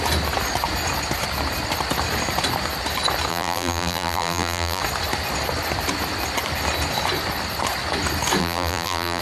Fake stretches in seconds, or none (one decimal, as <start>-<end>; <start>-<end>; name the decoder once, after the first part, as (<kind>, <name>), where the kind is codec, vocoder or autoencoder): 3.3-4.8 (vocoder, BigVGAN v2); 8.4-9.2